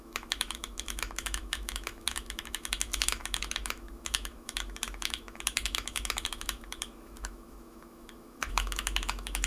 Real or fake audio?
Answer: fake